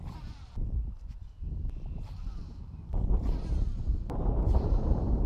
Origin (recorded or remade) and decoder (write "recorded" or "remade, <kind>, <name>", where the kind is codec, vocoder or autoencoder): remade, vocoder, BigVGAN v2